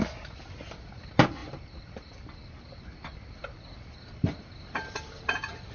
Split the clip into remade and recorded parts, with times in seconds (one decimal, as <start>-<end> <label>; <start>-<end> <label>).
0.0-5.7 recorded